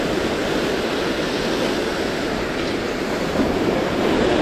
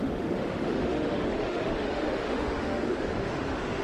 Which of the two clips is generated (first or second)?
second